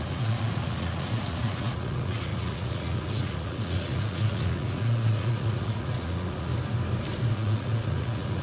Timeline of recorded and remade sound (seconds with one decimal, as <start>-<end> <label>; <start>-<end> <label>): 0.0-6.5 remade; 6.5-7.3 recorded; 7.3-8.4 remade